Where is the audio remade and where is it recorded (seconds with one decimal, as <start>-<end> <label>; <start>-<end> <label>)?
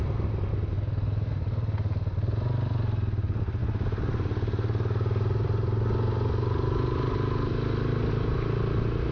0.0-9.1 recorded